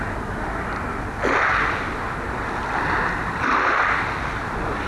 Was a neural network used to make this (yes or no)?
no